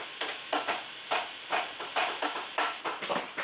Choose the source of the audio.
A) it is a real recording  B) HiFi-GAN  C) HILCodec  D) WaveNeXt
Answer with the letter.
A